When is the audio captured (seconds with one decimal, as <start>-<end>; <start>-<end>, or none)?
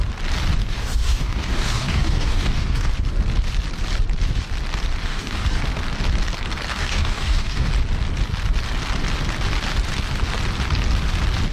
0.0-0.6; 2.9-5.1; 5.6-6.7; 7.7-11.5